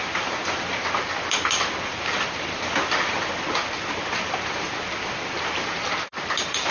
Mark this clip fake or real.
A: fake